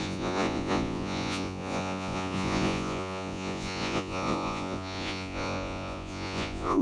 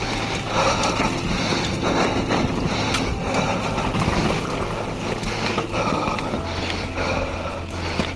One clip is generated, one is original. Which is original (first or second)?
second